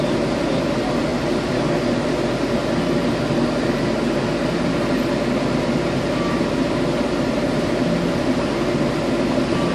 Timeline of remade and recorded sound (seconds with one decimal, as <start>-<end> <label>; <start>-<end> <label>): 0.0-9.7 recorded